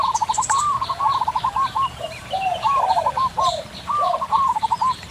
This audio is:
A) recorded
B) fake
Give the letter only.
B